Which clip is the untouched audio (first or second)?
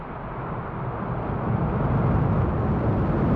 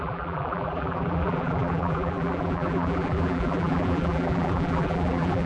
first